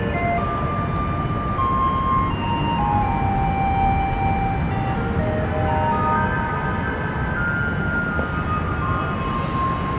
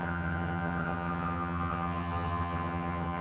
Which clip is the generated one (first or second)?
second